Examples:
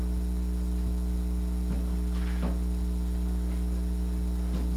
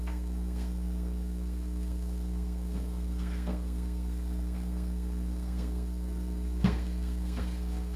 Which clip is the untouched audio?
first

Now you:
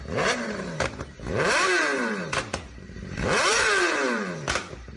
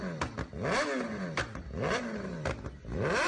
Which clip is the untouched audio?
second